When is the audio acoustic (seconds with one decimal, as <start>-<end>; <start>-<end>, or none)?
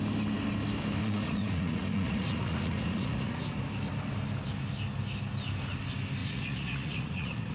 0.0-1.0; 3.6-6.2